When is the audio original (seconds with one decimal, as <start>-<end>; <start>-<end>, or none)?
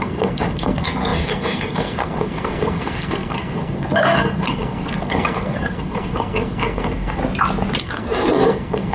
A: 7.2-7.8